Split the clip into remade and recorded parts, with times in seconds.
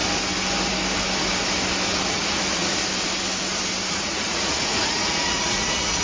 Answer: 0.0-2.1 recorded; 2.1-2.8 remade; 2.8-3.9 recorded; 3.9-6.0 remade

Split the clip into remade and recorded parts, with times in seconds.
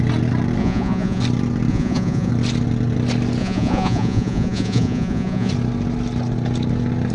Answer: 0.0-0.6 recorded; 0.6-1.2 remade; 1.2-1.7 recorded; 1.7-2.3 remade; 2.3-3.4 recorded; 3.4-5.5 remade; 5.5-7.1 recorded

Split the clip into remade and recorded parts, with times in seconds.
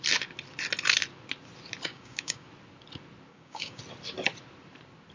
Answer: 0.0-1.9 recorded; 1.9-2.5 remade; 2.5-3.3 recorded; 3.3-3.8 remade; 3.8-5.1 recorded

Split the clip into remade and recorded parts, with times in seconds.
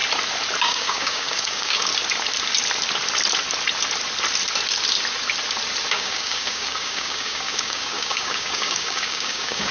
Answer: 0.0-0.6 recorded; 0.6-1.9 remade; 1.9-5.9 recorded; 5.9-9.7 remade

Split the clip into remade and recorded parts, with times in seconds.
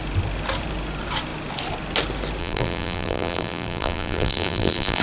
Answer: 0.0-2.4 recorded; 2.4-5.0 remade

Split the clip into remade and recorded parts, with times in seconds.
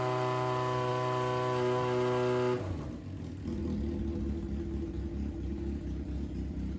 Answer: 0.0-6.8 recorded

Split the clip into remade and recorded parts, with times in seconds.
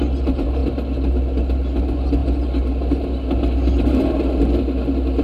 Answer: 0.0-5.2 recorded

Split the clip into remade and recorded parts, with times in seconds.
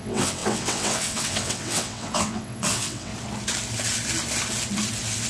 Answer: 0.0-3.1 remade; 3.1-5.3 recorded